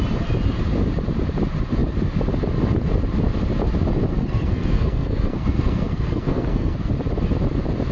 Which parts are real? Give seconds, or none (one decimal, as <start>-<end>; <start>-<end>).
0.0-4.1; 6.9-7.9